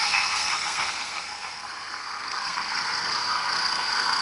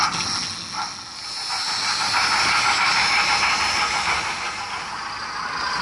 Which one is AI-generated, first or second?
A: first